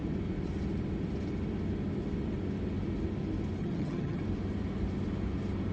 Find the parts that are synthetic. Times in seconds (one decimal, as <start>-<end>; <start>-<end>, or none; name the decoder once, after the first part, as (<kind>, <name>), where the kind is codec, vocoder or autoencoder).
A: 3.6-4.2 (vocoder, HiFi-GAN)